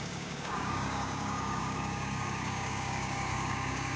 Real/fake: fake